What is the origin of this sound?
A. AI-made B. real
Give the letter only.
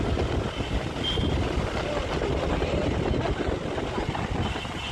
B